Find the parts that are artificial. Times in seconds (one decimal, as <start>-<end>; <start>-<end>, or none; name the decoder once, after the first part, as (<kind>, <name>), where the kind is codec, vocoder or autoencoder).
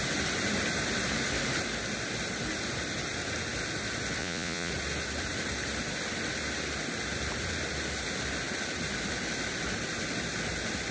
4.2-4.7 (vocoder, Vocos)